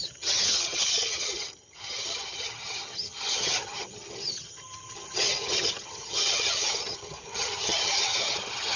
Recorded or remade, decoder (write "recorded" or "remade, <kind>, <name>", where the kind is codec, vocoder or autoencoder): remade, vocoder, HiFi-GAN